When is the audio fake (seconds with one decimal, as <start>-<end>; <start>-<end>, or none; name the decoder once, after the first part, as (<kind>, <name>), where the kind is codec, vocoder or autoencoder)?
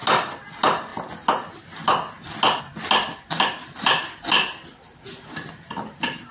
none